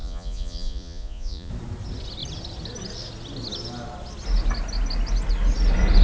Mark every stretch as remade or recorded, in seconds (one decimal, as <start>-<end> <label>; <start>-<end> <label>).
0.0-1.5 remade; 1.5-6.0 recorded